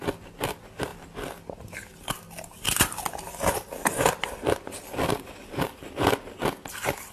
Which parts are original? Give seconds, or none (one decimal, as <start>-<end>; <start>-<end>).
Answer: 0.0-7.1